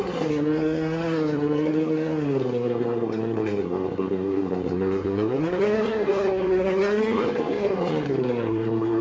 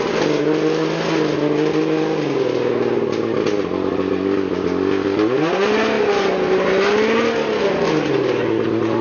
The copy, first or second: first